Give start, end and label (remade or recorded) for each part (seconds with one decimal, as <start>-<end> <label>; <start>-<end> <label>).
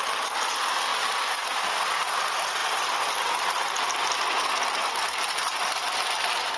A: 0.0-6.6 recorded